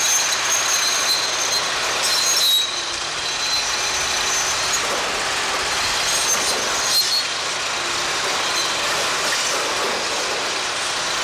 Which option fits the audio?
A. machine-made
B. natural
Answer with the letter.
B